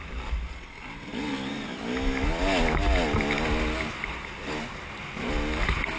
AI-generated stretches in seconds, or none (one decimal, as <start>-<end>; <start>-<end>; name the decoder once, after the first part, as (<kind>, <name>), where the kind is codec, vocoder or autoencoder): none